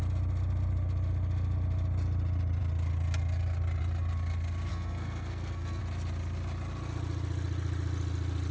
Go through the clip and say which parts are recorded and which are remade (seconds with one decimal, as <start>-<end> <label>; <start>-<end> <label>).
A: 0.0-4.7 recorded; 4.7-5.8 remade; 5.8-8.5 recorded